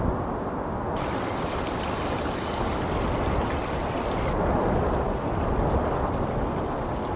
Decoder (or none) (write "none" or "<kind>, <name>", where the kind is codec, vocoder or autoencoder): none